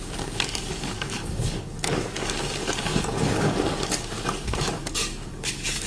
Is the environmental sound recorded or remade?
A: remade